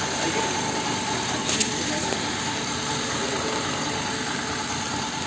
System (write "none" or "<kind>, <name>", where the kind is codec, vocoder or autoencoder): none